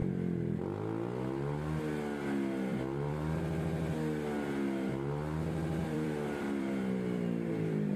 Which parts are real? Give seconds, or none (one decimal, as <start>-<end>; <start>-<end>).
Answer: 0.6-2.7; 3.4-5.8; 7.5-8.0